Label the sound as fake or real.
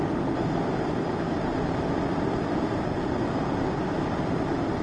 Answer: real